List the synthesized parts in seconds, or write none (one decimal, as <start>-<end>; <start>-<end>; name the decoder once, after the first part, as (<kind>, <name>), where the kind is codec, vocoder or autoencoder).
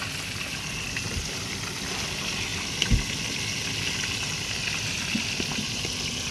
none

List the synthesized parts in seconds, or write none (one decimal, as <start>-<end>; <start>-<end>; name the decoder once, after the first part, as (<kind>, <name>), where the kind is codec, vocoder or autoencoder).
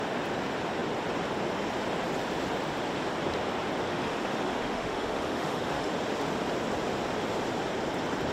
3.9-5.9 (autoencoder, DAC-VAE)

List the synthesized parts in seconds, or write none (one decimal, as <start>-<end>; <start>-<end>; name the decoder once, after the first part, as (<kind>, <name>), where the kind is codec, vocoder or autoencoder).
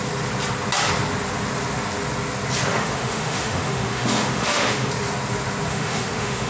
2.7-4.9 (autoencoder, DAC-VAE); 5.7-6.5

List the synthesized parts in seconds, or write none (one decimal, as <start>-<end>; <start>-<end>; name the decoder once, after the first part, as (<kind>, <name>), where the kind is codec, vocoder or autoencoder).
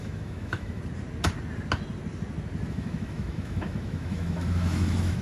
0.0-0.8 (autoencoder, DAC-VAE); 2.7-5.2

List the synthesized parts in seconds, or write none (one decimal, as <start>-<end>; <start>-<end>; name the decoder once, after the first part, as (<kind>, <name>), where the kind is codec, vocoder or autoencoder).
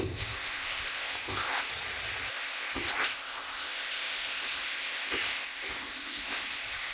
0.0-1.7 (codec, ZipCodec); 2.3-6.9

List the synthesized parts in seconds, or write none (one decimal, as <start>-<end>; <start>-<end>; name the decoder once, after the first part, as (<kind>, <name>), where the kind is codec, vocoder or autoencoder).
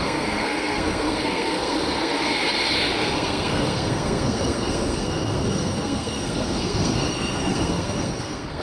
0.0-8.6 (codec, SNAC)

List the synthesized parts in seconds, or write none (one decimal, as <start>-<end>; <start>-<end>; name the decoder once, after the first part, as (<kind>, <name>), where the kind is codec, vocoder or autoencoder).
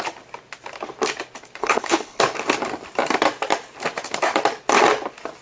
1.6-2.2 (codec, HILCodec)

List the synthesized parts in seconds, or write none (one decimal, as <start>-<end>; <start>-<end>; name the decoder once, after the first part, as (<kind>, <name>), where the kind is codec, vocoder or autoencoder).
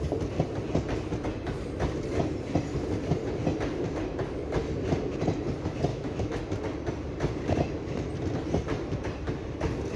5.9-6.4 (autoencoder, DAC-VAE)